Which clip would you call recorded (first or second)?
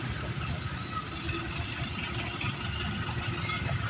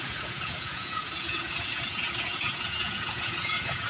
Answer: first